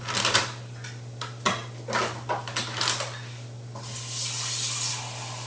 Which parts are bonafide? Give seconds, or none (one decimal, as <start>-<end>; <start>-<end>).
0.0-5.5